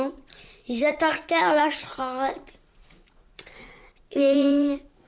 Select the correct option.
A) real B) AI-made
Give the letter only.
B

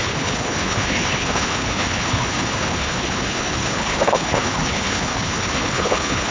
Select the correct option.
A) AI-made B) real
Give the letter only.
A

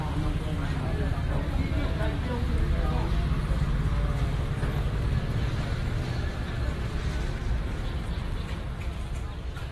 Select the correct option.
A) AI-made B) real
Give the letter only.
B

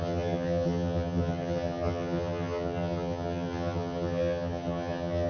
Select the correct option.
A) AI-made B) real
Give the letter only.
A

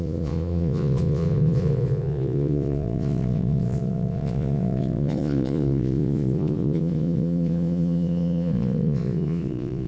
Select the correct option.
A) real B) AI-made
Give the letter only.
B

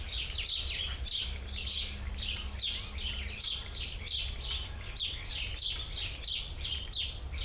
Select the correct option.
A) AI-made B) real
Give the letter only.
B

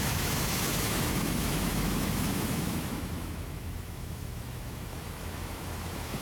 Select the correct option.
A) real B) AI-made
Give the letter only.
B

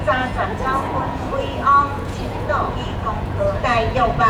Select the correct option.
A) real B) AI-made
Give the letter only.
B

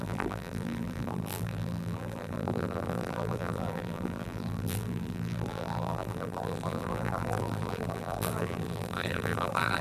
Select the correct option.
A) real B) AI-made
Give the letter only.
B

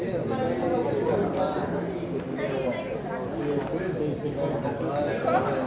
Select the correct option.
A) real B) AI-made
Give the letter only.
A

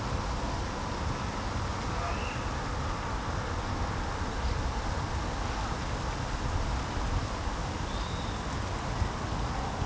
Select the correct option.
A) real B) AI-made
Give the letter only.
A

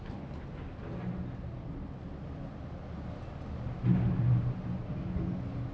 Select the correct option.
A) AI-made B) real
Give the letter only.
B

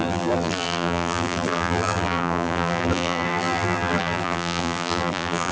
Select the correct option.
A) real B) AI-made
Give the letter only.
B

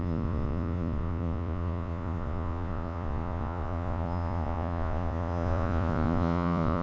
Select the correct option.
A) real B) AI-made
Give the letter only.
B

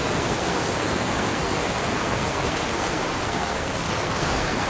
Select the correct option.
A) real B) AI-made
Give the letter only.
B